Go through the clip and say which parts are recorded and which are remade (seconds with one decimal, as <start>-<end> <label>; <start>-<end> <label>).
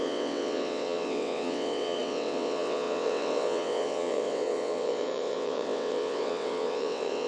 0.0-7.3 remade